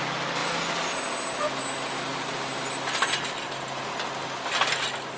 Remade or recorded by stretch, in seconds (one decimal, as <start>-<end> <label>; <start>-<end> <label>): 0.0-5.2 recorded